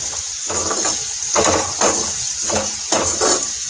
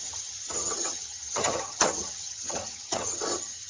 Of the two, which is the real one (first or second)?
first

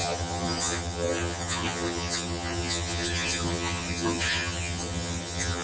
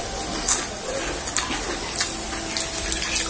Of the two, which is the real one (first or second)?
second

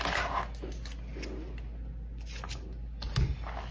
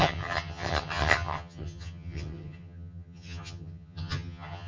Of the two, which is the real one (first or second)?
first